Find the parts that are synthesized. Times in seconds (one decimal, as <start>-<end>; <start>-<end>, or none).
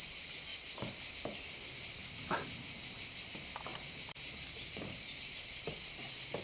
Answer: 0.5-1.1; 3.7-5.6